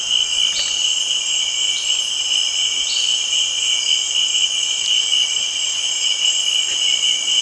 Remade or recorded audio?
recorded